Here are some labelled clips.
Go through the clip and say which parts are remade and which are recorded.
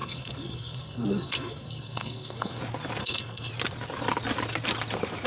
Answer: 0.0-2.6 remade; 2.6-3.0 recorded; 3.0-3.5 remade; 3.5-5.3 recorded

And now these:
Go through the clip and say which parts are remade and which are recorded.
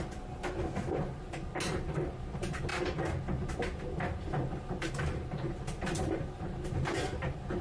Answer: 0.0-7.6 recorded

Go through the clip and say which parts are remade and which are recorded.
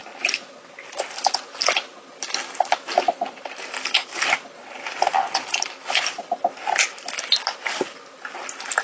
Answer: 0.0-8.8 recorded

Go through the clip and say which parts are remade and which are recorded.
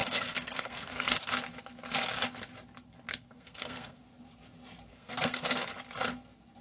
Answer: 0.0-1.2 remade; 1.2-3.1 recorded; 3.1-4.0 remade; 4.0-4.9 recorded; 4.9-5.7 remade; 5.7-6.6 recorded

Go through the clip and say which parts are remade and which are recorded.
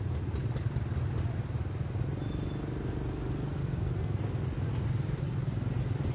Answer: 0.0-3.6 recorded; 3.6-4.2 remade; 4.2-6.1 recorded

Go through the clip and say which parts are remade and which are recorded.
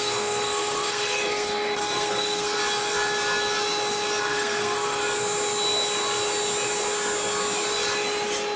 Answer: 0.0-2.6 remade; 2.6-4.2 recorded; 4.2-5.0 remade; 5.0-8.6 recorded